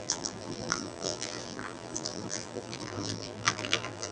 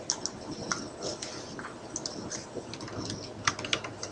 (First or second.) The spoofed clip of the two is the first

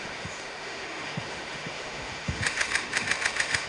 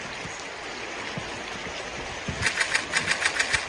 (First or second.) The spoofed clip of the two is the first